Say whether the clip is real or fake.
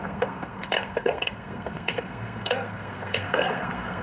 fake